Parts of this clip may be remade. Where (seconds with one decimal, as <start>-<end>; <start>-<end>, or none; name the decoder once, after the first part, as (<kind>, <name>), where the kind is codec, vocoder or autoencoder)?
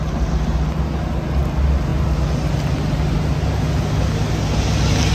none